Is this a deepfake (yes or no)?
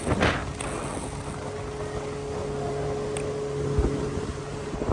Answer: no